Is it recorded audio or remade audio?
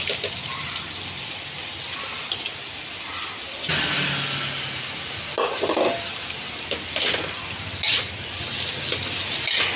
recorded